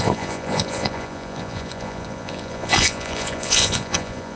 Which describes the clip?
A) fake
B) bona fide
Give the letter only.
A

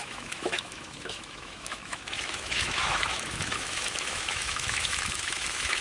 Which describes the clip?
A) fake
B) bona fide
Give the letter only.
A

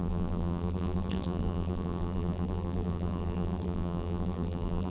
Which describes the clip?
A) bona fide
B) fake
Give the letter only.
B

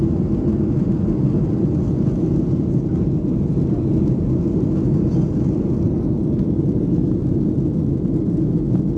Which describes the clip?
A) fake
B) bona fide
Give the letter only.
B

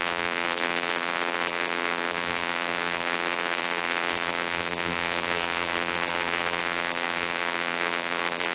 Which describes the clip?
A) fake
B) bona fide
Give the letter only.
A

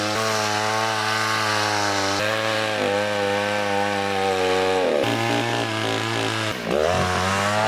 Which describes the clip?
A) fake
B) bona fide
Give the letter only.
B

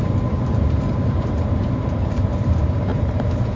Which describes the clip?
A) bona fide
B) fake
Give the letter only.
B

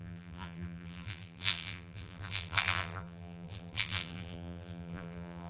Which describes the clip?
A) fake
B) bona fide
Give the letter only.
A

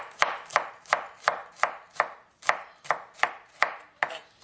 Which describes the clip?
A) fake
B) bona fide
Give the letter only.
B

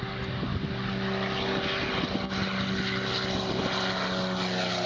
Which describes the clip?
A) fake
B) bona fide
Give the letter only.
B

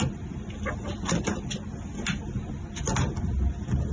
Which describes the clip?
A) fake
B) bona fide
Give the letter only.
B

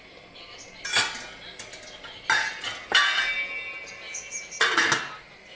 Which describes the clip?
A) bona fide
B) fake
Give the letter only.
A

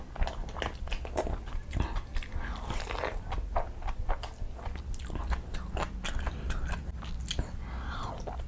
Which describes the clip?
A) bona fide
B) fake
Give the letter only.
A